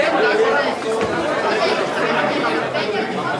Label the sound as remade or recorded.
remade